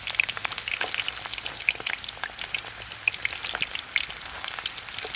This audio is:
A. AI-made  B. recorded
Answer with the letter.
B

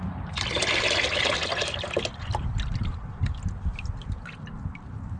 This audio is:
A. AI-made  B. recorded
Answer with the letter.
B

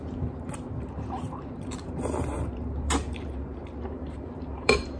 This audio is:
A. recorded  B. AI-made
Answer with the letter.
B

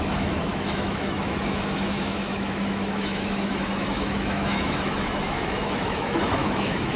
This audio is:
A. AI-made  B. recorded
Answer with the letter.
A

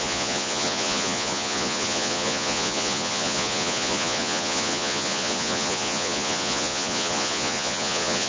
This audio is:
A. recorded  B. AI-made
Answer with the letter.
B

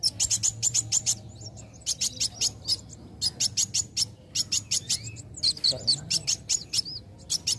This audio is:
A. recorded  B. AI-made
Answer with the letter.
A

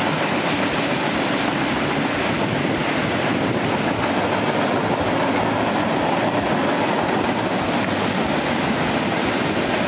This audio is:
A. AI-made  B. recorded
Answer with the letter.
B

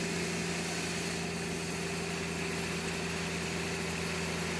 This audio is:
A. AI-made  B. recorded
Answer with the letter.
B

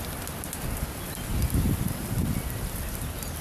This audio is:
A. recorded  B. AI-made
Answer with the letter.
A